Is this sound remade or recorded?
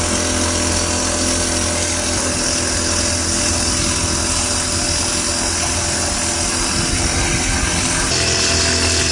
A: recorded